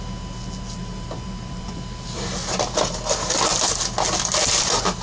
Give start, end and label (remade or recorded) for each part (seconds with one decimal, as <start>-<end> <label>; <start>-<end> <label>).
0.0-0.8 recorded; 0.8-2.9 remade; 2.9-5.0 recorded